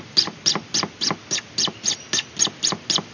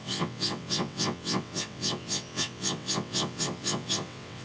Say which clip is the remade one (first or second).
second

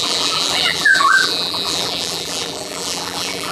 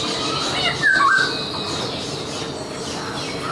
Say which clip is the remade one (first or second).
first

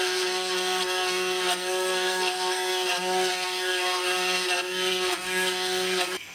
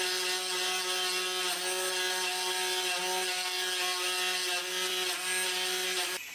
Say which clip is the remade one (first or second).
first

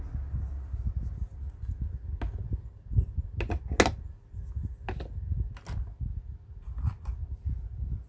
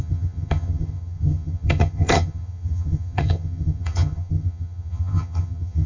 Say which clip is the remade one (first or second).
second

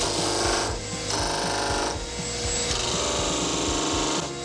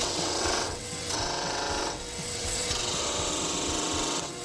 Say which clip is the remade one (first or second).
second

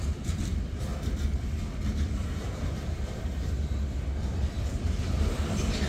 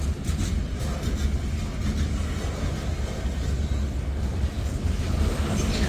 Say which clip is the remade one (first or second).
first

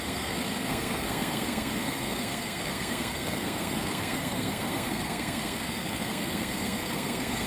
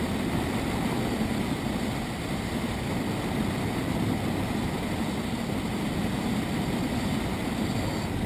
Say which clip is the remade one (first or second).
first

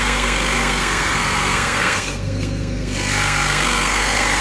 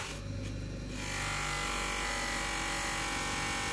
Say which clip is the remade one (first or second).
first